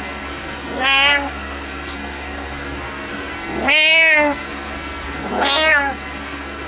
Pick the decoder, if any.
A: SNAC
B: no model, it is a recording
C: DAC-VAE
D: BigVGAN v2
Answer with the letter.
A